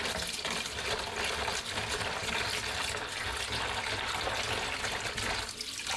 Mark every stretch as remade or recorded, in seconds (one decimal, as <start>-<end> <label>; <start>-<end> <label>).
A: 0.0-6.0 recorded